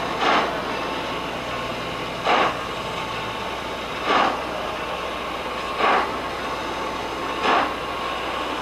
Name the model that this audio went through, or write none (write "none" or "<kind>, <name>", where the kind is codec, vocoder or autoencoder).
none